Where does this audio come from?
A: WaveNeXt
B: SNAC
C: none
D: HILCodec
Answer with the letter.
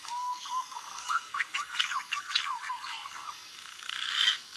B